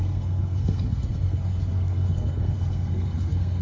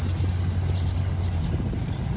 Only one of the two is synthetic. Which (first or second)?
first